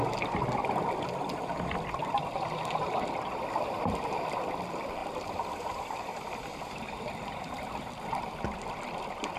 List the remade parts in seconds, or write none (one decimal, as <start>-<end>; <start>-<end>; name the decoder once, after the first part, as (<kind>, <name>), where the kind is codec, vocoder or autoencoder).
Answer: 5.0-8.4 (vocoder, BigVGAN v2)